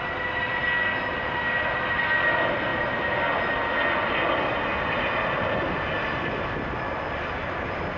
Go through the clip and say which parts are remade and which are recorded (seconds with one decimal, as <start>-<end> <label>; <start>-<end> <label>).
0.0-8.0 recorded